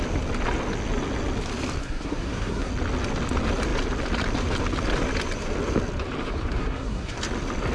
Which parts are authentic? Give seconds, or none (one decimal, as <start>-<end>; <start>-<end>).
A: 0.0-1.8; 2.7-6.6; 7.2-7.7